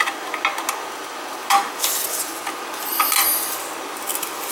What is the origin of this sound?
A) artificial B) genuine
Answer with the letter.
B